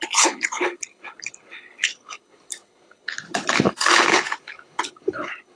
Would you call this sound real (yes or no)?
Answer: no